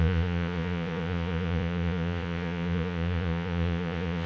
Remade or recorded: remade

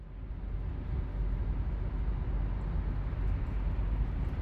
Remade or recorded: recorded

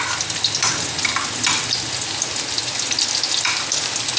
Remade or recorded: recorded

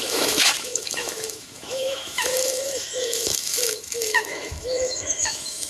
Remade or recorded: remade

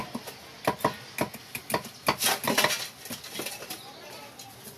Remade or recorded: recorded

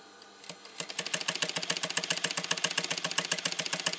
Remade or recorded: recorded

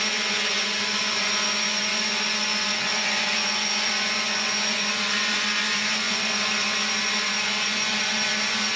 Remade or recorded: remade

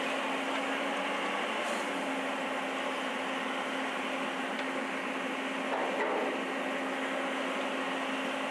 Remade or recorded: recorded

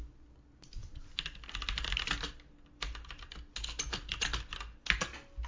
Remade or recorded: recorded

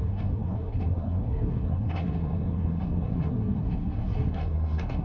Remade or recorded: remade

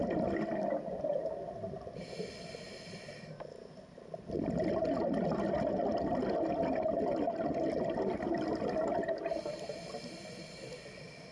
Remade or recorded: recorded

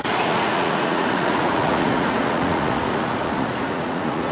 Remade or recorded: remade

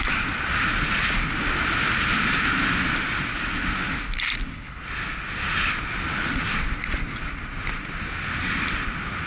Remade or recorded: recorded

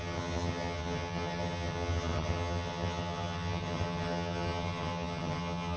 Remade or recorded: remade